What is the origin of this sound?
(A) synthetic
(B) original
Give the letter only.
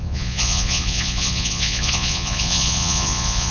A